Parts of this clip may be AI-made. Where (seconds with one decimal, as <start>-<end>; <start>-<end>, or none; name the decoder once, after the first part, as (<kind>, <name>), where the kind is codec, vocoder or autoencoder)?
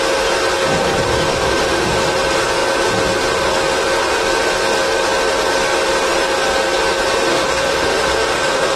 1.3-1.9 (autoencoder, DAC-VAE); 7.3-8.8